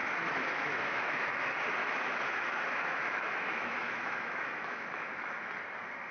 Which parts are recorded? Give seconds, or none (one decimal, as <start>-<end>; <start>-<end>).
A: 1.4-1.8; 5.5-6.1